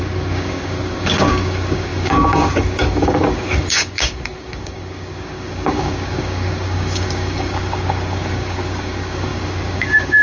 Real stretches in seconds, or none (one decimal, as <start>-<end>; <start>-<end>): none